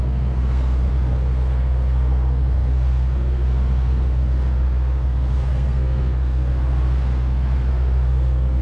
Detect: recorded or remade remade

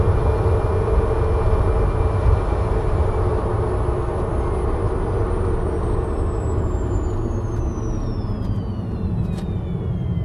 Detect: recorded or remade recorded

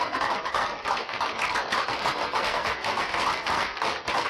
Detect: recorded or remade remade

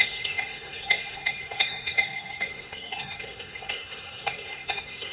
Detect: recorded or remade remade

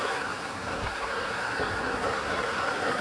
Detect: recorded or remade remade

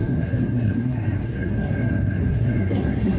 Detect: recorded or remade remade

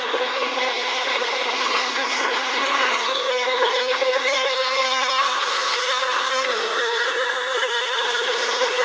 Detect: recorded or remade remade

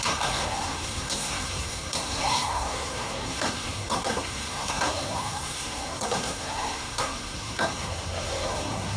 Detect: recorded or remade remade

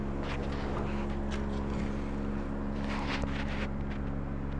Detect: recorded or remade recorded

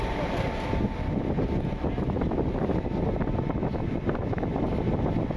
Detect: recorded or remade recorded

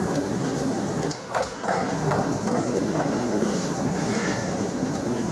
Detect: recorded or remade remade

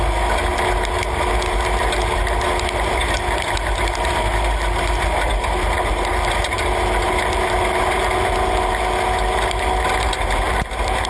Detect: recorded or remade recorded